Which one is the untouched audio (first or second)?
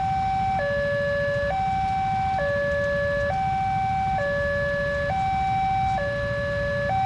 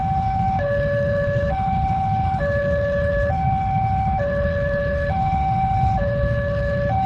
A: first